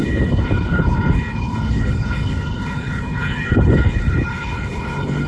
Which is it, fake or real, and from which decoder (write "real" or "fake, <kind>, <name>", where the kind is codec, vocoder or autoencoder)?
fake, codec, HILCodec